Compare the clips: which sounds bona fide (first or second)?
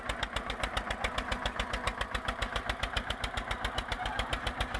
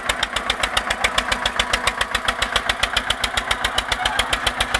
second